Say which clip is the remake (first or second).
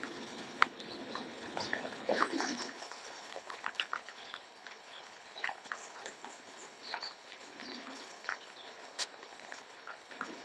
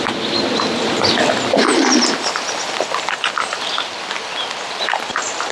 first